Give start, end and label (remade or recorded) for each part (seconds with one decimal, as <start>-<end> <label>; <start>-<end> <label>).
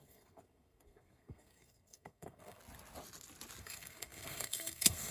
0.0-2.6 remade; 2.6-3.6 recorded; 3.6-5.1 remade